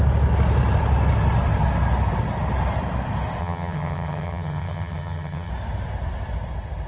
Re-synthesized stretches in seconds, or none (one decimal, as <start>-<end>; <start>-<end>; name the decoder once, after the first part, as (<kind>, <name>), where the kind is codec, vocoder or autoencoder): 3.4-5.5 (vocoder, HiFi-GAN)